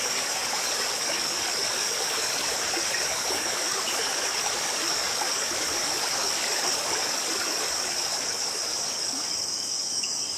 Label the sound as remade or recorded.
remade